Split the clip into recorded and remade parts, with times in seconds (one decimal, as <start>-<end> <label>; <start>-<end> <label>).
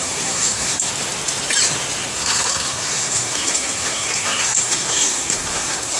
0.0-0.9 remade; 0.9-2.1 recorded; 2.1-6.0 remade